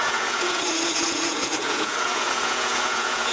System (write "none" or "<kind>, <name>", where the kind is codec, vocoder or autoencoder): vocoder, Vocos